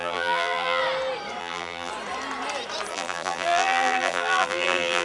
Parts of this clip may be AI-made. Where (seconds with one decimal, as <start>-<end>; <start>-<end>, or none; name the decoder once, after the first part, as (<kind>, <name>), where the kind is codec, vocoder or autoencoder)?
0.0-0.8 (vocoder, BigVGAN v2); 1.4-1.9; 2.9-5.0